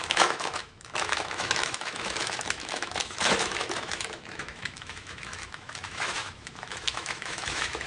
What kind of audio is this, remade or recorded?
remade